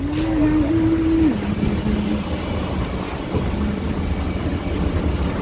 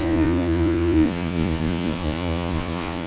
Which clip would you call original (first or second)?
first